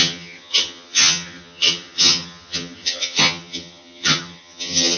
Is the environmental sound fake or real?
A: fake